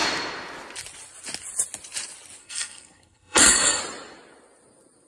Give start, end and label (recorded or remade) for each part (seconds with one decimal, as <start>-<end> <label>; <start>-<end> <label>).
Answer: 0.0-2.4 recorded; 2.4-3.8 remade; 3.8-5.1 recorded